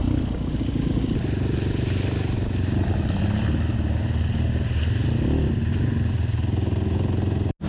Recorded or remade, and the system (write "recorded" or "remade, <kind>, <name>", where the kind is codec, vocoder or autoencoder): recorded